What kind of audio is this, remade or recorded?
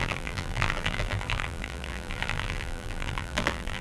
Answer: remade